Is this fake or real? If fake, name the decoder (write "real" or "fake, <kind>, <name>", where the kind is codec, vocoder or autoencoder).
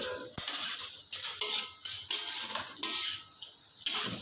real